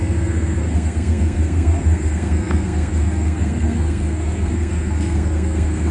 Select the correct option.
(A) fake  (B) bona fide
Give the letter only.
A